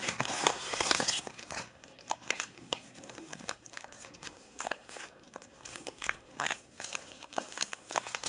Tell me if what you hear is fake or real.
fake